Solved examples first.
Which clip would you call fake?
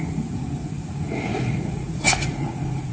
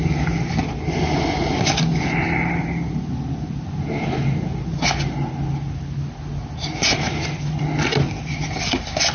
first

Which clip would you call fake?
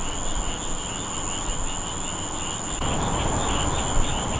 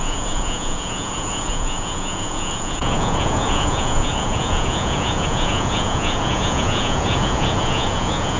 second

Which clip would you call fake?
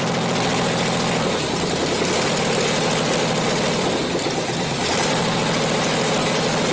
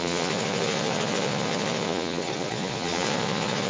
second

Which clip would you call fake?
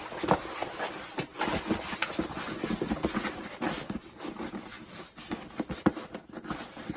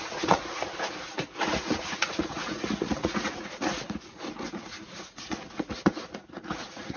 second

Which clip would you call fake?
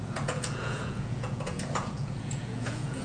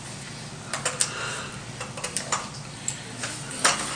first